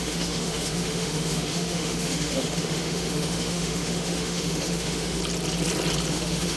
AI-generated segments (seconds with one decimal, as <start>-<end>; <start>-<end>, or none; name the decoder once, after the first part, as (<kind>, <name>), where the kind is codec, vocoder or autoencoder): 0.0-5.2 (autoencoder, DAC-VAE); 6.1-6.6